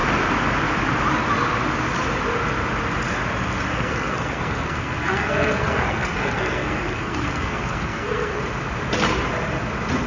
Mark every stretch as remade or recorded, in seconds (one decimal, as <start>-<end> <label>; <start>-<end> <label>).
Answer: 0.0-3.7 recorded; 3.7-8.4 remade; 8.4-10.1 recorded